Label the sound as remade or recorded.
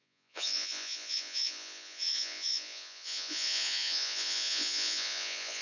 remade